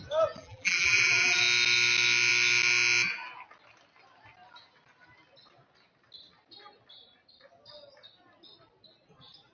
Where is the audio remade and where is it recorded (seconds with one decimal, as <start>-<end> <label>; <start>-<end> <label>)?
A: 0.0-0.4 recorded; 0.4-1.4 remade; 1.4-9.5 recorded